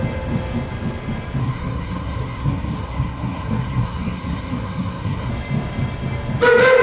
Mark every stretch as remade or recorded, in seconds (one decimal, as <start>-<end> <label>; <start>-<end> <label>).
0.0-1.4 recorded; 1.4-5.3 remade; 5.3-6.8 recorded